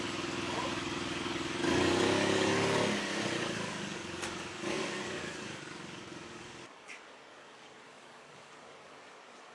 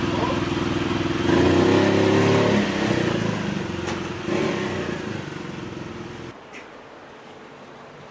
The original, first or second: second